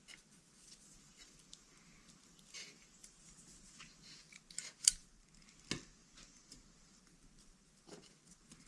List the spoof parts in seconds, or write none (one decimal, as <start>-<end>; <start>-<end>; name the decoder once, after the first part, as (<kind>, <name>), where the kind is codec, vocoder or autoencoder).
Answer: none